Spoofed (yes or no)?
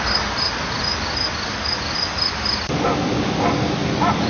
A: no